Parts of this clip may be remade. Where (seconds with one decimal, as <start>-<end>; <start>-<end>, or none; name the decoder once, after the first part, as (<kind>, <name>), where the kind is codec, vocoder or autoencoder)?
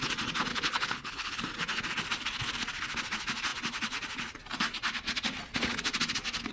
0.5-1.4 (codec, HILCodec)